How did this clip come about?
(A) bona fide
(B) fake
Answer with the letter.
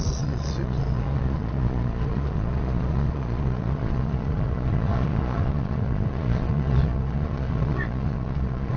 B